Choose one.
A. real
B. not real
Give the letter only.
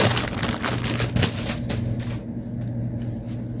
A